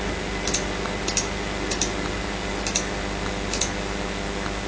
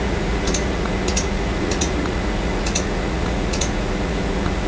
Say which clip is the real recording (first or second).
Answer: first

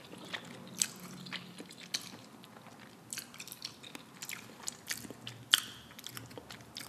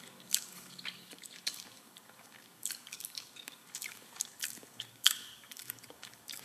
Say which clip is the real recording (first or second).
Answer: first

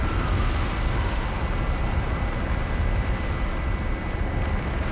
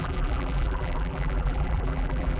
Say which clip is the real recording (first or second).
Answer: first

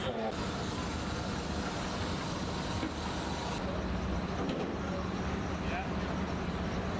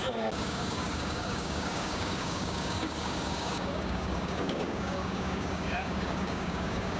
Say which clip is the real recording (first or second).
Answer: first